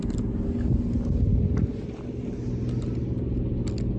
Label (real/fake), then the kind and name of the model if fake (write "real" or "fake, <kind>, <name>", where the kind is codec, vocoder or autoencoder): real